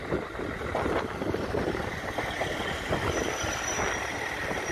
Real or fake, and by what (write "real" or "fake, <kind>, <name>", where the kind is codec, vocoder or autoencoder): real